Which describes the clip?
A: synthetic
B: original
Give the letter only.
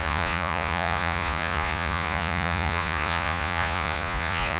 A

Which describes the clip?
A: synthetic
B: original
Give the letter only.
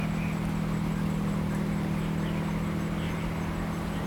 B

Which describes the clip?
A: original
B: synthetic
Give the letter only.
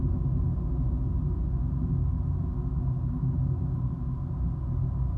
A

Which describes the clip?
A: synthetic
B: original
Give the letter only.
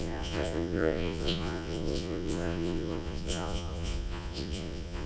A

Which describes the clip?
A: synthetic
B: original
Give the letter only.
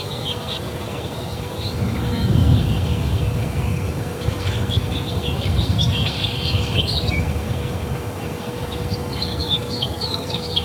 A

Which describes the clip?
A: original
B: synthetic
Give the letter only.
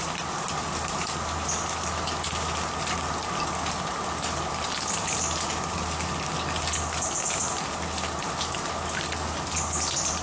A